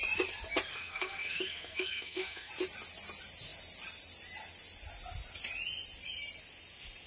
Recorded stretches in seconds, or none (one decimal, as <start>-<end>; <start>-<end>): 0.0-0.7; 2.5-7.1